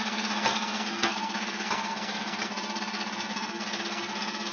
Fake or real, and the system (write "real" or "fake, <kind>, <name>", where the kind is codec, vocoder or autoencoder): fake, codec, SNAC